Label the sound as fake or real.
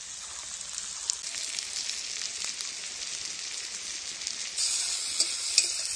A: real